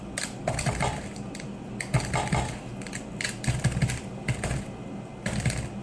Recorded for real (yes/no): yes